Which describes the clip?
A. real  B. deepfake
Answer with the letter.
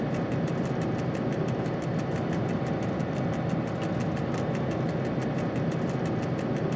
A